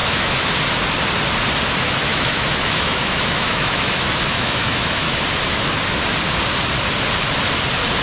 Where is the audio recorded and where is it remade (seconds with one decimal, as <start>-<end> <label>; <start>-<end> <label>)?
0.0-0.5 remade; 0.5-2.1 recorded; 2.1-5.2 remade; 5.2-8.0 recorded